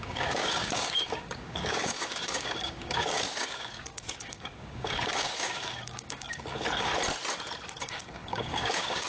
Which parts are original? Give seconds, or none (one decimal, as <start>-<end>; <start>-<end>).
6.9-7.8

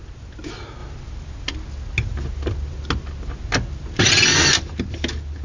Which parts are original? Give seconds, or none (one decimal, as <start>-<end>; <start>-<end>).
0.0-5.4